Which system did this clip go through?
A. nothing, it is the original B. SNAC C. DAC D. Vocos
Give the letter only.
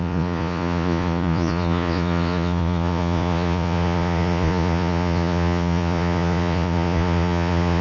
D